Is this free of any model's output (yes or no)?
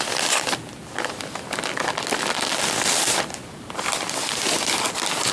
yes